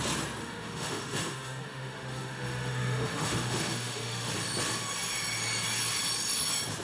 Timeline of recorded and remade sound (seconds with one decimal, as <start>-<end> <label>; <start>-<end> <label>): 0.0-0.4 recorded; 0.4-4.3 remade; 4.3-6.8 recorded